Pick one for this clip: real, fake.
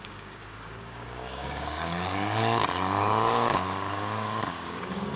fake